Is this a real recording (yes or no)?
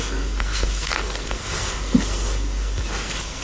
no